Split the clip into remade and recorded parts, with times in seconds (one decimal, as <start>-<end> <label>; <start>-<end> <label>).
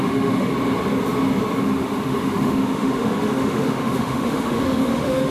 0.0-0.5 remade; 0.5-1.6 recorded; 1.6-5.3 remade